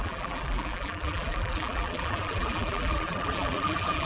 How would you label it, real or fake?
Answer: fake